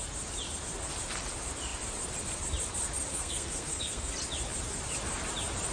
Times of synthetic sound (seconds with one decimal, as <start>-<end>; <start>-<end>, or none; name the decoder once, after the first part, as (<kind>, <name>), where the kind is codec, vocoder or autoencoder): 3.1-4.1 (codec, SNAC)